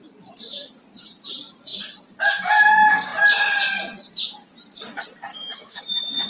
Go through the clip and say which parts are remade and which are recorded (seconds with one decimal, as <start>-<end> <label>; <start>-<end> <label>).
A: 0.0-5.3 recorded; 5.3-5.8 remade; 5.8-6.3 recorded